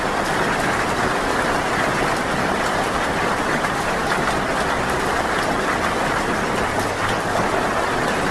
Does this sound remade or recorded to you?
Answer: recorded